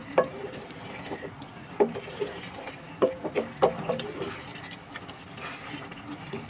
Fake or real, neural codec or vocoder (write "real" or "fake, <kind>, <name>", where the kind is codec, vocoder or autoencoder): real